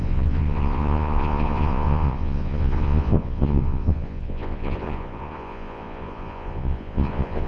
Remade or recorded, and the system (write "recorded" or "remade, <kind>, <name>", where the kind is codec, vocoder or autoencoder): remade, vocoder, Vocos